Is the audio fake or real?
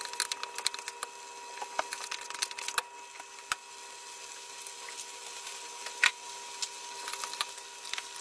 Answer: real